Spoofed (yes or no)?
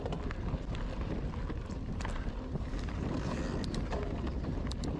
no